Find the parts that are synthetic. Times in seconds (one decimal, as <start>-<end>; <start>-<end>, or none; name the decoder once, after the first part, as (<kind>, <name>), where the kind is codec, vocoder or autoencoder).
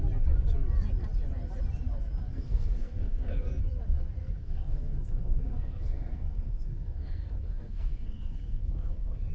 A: 2.3-3.6 (codec, SNAC); 4.2-9.3